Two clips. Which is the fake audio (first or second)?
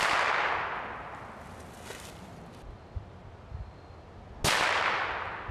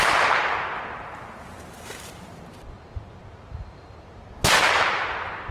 second